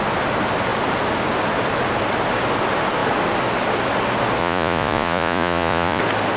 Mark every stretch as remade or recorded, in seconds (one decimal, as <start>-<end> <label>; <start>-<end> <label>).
0.0-4.4 recorded; 4.4-6.0 remade; 6.0-6.4 recorded